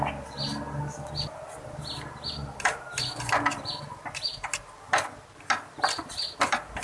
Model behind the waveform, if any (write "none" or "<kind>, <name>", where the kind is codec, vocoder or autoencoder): none